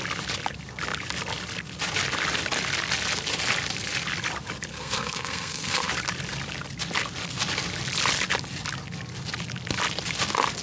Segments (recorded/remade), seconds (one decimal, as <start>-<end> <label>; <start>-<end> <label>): 0.0-4.7 recorded; 4.7-5.9 remade; 5.9-10.6 recorded